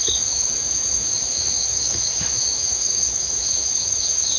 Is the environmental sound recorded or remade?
remade